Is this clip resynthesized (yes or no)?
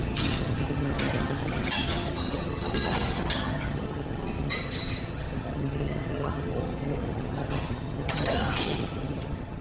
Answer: yes